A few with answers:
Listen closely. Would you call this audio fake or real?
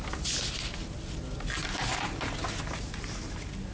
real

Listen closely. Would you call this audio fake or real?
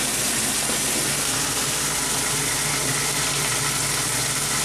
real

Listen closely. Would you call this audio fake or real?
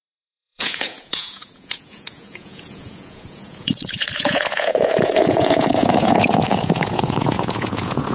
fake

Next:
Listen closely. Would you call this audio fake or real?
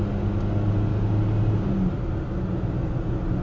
real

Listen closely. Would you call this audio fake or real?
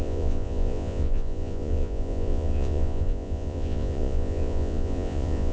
fake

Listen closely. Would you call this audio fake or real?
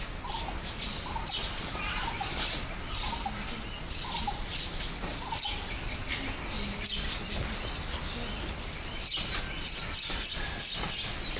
real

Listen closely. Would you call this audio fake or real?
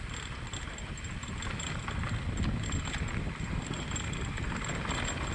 real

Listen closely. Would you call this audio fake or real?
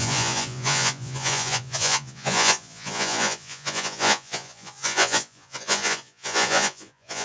fake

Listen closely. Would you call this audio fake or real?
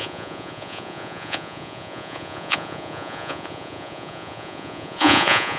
fake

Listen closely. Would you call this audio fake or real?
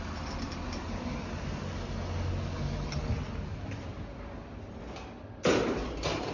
real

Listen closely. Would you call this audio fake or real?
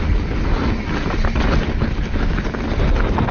real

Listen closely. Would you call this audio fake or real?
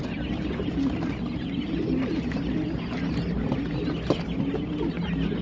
real